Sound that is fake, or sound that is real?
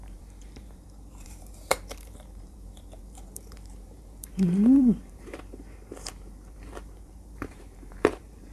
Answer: fake